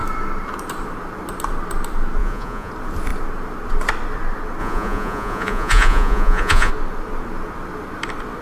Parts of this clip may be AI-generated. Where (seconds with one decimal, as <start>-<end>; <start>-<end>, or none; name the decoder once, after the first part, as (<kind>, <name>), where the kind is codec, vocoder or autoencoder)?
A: 2.2-2.7 (vocoder, Vocos); 4.6-6.7

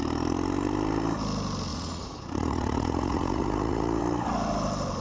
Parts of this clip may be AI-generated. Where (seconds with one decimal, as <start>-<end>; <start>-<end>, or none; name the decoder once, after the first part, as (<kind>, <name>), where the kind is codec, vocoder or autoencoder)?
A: 1.7-4.0 (vocoder, Vocos)